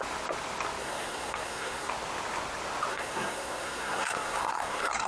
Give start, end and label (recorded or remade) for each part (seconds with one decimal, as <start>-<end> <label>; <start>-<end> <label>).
0.0-0.8 recorded; 0.8-1.9 remade; 1.9-2.9 recorded; 2.9-5.1 remade